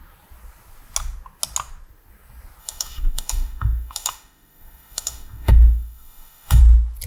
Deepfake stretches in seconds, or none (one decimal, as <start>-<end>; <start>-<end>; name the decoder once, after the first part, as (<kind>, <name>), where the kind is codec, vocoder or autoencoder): 2.6-6.6 (autoencoder, DAC-VAE)